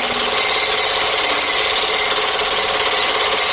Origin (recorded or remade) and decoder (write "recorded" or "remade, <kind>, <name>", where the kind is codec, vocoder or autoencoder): recorded